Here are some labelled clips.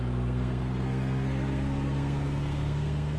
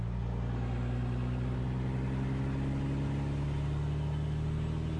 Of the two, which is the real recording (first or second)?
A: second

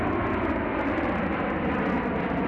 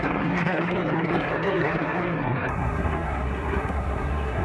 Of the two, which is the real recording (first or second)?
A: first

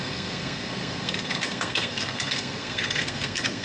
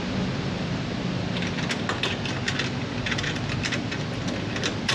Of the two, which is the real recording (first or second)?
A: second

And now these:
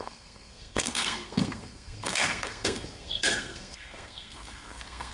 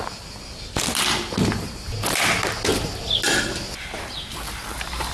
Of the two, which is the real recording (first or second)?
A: second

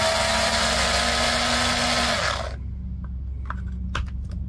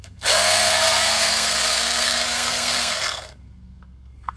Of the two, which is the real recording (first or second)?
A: first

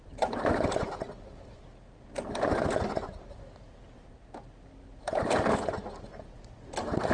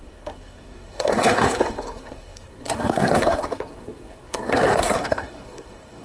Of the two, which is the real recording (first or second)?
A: first